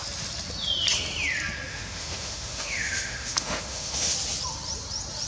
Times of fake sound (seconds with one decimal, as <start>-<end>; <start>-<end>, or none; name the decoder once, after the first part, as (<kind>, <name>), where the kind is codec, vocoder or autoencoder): 1.7-4.1 (autoencoder, DAC-VAE)

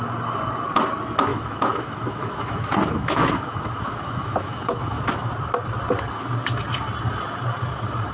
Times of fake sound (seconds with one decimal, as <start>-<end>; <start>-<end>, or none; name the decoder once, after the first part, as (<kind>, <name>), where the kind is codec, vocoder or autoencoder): 1.3-5.3 (autoencoder, DAC-VAE)

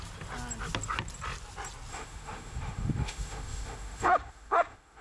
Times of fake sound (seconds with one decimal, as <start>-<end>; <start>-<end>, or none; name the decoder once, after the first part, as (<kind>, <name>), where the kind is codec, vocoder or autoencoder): 1.9-5.0 (autoencoder, DAC-VAE)

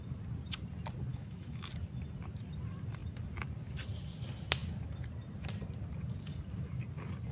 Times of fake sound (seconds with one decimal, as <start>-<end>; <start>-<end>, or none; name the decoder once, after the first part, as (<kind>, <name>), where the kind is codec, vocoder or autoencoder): 1.1-1.7 (autoencoder, DAC-VAE)

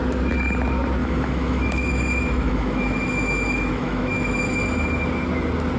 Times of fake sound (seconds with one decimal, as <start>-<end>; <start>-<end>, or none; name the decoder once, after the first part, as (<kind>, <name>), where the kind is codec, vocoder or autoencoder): 1.0-4.5 (autoencoder, DAC-VAE)

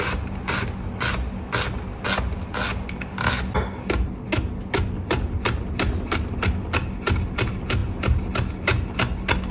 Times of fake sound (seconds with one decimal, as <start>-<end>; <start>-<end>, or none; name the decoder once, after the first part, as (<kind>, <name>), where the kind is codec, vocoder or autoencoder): none

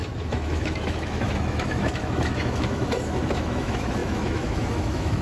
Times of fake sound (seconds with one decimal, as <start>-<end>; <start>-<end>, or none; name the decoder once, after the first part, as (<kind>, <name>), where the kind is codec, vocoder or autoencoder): 0.0-5.2 (autoencoder, DAC-VAE)